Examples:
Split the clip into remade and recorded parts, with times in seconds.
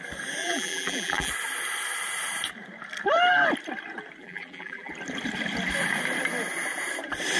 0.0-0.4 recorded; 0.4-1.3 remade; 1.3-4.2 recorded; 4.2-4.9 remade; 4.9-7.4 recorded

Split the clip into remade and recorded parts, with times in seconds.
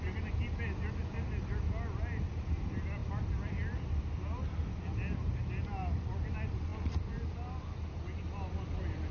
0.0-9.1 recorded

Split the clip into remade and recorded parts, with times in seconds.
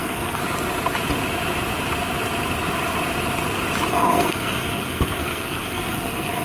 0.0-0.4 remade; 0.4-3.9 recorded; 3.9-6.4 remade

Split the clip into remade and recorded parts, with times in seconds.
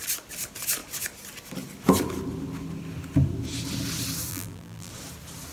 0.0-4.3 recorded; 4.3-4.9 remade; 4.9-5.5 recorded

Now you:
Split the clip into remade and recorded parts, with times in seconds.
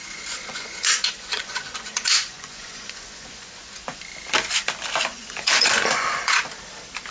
0.0-4.0 remade; 4.0-5.1 recorded; 5.1-6.4 remade; 6.4-7.1 recorded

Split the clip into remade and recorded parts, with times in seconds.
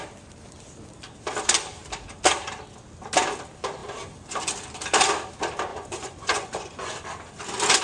0.0-5.7 recorded; 5.7-6.9 remade; 6.9-7.8 recorded